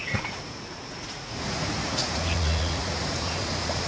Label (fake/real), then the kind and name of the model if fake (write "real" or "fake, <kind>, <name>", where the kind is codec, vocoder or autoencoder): fake, vocoder, Vocos